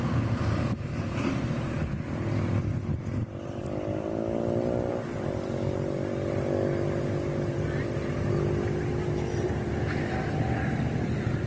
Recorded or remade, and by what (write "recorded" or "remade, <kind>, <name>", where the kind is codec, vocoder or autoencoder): recorded